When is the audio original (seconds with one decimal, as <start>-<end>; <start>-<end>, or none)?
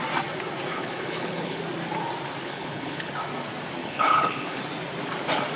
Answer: 0.0-0.7; 1.6-2.4; 3.1-3.8; 4.6-5.6